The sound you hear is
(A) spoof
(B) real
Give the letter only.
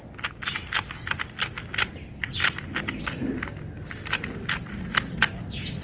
B